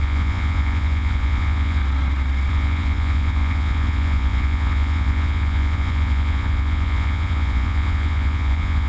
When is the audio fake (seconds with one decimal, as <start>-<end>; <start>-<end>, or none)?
0.0-1.8; 2.5-8.9